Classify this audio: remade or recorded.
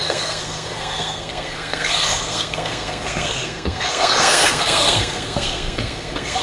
remade